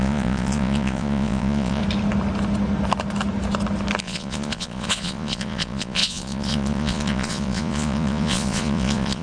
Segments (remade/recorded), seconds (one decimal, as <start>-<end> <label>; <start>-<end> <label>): 0.0-1.8 remade; 1.8-4.0 recorded; 4.0-9.2 remade